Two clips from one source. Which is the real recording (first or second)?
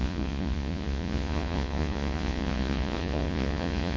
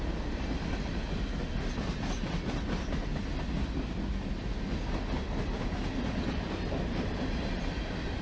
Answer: second